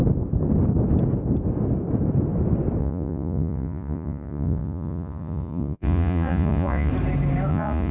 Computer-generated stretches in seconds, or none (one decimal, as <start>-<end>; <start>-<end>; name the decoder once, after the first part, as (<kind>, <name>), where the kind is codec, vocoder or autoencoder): 2.8-6.9 (vocoder, Vocos); 7.5-7.9